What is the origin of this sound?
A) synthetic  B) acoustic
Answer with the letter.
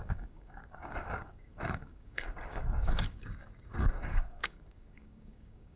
A